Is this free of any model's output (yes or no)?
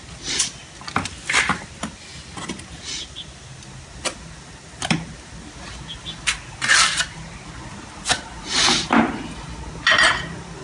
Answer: yes